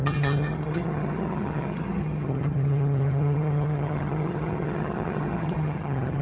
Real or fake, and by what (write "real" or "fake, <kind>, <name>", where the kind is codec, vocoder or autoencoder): fake, vocoder, HiFi-GAN